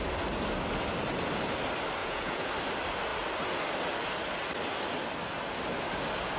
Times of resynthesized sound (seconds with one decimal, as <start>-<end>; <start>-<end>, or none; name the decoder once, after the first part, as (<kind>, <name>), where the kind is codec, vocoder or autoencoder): 2.0-2.5 (vocoder, Vocos)